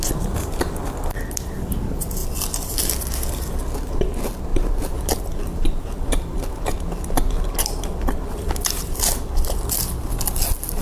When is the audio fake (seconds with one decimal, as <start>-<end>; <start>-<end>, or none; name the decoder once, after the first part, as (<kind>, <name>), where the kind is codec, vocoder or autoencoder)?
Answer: 4.5-5.2 (vocoder, BigVGAN v2)